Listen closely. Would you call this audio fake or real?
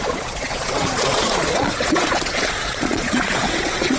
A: fake